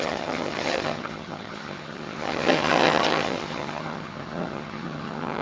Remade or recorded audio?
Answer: remade